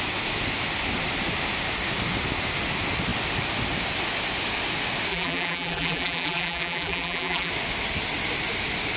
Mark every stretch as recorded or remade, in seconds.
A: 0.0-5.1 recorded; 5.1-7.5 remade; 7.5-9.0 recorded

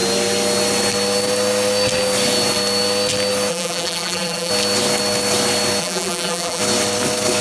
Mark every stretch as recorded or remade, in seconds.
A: 0.0-3.5 recorded; 3.5-4.5 remade; 4.5-5.8 recorded; 5.8-6.6 remade; 6.6-7.4 recorded

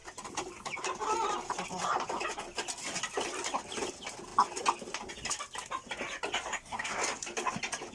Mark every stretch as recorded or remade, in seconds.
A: 0.0-6.5 recorded; 6.5-7.0 remade; 7.0-7.9 recorded

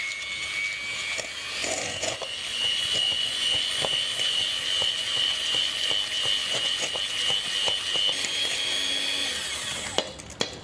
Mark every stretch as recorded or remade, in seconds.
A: 0.0-1.6 recorded; 1.6-5.9 remade; 5.9-6.4 recorded; 6.4-7.0 remade; 7.0-10.6 recorded

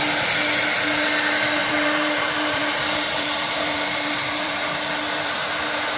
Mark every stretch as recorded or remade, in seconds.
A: 0.0-1.6 recorded; 1.6-4.5 remade; 4.5-6.0 recorded

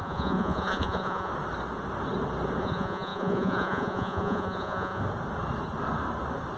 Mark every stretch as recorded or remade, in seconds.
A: 0.0-1.3 remade; 1.3-2.6 recorded; 2.6-5.0 remade; 5.0-6.6 recorded

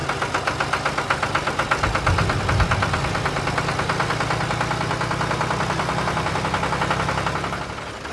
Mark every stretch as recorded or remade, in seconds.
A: 0.0-8.1 recorded

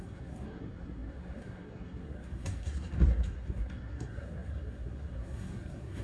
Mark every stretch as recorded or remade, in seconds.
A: 0.0-6.0 remade